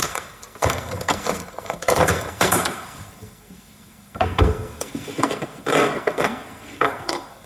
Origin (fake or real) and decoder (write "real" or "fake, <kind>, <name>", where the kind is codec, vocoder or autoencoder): fake, codec, SNAC